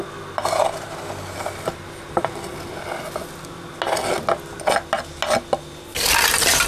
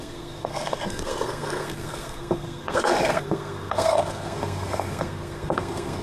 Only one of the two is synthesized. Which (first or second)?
second